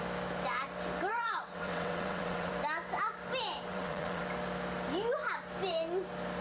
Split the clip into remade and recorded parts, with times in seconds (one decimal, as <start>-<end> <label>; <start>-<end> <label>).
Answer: 0.0-1.1 recorded; 1.1-2.5 remade; 2.5-3.7 recorded; 3.7-4.2 remade; 4.2-6.4 recorded